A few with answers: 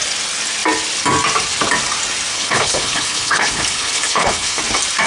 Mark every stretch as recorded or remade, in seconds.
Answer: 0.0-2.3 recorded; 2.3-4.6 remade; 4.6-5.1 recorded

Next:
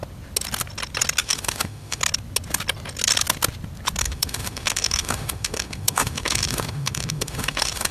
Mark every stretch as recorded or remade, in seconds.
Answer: 0.0-1.2 recorded; 1.2-2.0 remade; 2.0-4.0 recorded; 4.0-7.9 remade

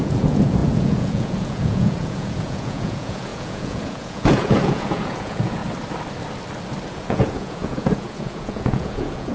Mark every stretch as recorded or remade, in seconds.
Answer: 0.0-5.6 remade; 5.6-6.9 recorded; 6.9-9.3 remade

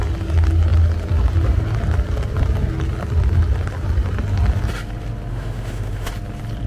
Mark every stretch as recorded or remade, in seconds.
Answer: 0.0-5.3 recorded; 5.3-6.1 remade; 6.1-6.7 recorded

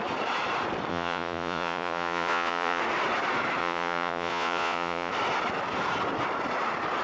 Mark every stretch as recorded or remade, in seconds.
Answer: 0.0-0.9 recorded; 0.9-2.8 remade; 2.8-3.6 recorded; 3.6-5.1 remade; 5.1-7.0 recorded

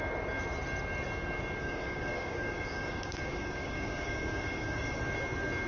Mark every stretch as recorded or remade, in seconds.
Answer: 0.0-1.6 recorded; 1.6-5.0 remade; 5.0-5.7 recorded

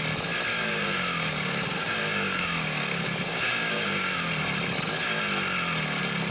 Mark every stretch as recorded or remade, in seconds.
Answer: 0.0-0.5 recorded; 0.5-4.3 remade; 4.3-6.3 recorded